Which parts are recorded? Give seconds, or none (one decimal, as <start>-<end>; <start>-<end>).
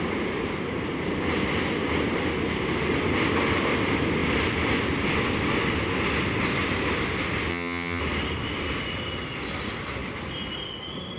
0.0-7.5; 8.0-11.2